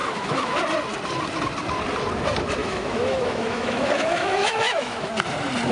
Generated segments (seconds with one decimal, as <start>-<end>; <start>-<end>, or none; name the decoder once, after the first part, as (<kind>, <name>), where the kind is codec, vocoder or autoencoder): 0.0-0.6 (autoencoder, DAC-VAE); 2.6-5.1